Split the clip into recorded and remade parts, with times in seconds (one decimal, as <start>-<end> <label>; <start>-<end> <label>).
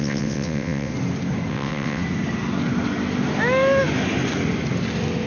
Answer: 0.0-0.9 remade; 0.9-1.5 recorded; 1.5-2.0 remade; 2.0-5.3 recorded